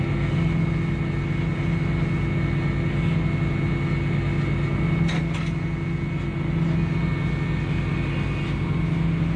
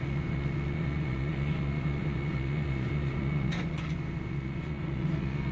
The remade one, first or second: second